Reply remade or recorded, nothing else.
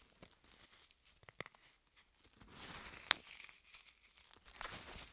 recorded